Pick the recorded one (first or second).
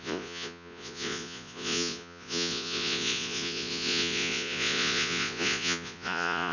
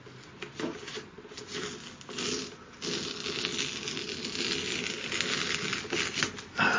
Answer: second